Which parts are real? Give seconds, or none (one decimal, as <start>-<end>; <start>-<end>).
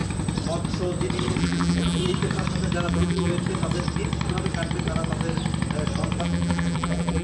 0.0-1.4; 2.0-2.9; 3.3-6.2